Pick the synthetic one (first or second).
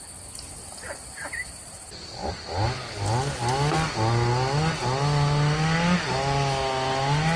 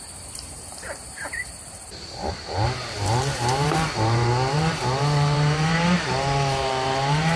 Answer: second